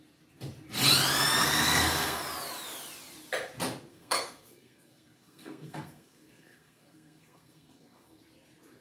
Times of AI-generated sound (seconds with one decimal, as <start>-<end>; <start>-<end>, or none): 1.4-2.2; 3.9-8.2